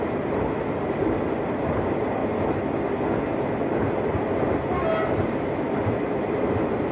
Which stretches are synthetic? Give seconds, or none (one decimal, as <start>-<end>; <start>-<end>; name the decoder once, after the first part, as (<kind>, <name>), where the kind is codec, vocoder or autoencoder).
none